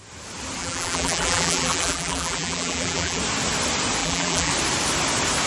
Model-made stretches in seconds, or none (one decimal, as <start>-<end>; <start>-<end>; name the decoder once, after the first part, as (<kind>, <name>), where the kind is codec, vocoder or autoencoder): 0.6-3.2 (vocoder, BigVGAN v2); 4.0-4.5